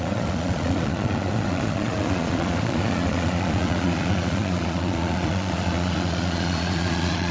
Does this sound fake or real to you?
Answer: fake